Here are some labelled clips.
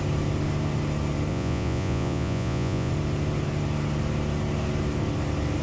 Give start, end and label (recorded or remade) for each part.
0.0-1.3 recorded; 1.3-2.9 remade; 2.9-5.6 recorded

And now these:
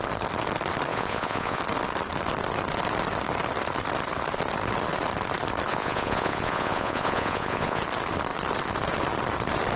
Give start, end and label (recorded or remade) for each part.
0.0-0.9 recorded; 0.9-1.6 remade; 1.6-5.7 recorded; 5.7-7.8 remade; 7.8-9.8 recorded

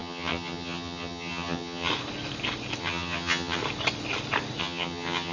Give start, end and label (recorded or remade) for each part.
0.0-1.9 remade; 1.9-2.8 recorded; 2.8-3.6 remade; 3.6-4.6 recorded; 4.6-5.3 remade

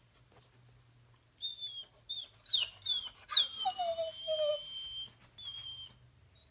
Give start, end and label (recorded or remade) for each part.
0.0-6.5 recorded